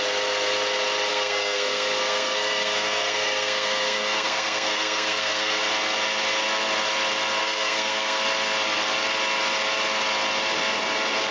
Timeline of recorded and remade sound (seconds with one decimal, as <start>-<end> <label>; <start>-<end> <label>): 0.0-1.1 recorded; 1.1-5.6 remade; 5.6-7.4 recorded; 7.4-8.2 remade; 8.2-11.3 recorded